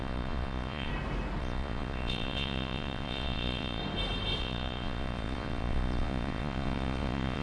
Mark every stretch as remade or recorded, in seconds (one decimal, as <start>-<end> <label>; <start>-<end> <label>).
0.0-0.9 remade; 0.9-1.4 recorded; 1.4-3.8 remade; 3.8-4.4 recorded; 4.4-7.4 remade